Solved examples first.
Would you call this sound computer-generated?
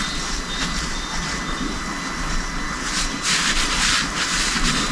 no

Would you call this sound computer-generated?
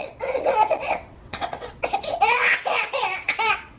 yes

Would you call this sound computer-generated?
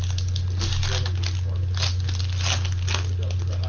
no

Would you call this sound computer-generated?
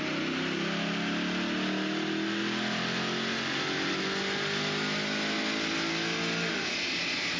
no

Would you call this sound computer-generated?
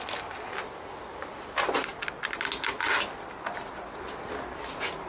no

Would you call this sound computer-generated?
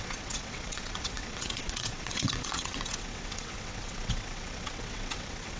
yes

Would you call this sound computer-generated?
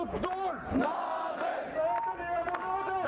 no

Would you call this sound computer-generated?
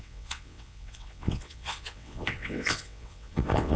yes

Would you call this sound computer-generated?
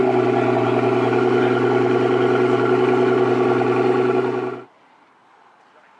no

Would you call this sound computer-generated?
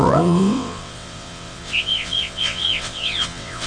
yes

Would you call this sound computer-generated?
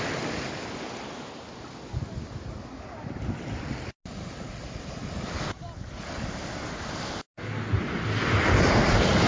no